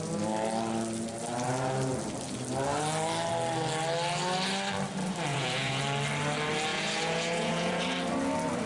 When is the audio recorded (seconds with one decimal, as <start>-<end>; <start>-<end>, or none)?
0.0-5.3; 5.8-6.7; 7.8-8.7